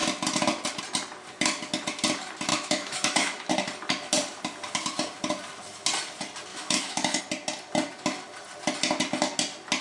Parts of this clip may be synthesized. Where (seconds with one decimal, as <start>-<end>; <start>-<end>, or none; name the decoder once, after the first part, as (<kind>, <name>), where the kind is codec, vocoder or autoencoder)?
2.5-3.5 (autoencoder, DAC-VAE); 6.5-7.2